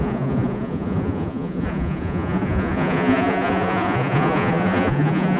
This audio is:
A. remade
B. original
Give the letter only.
A